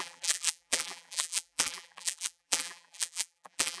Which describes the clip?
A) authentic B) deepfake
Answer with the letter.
B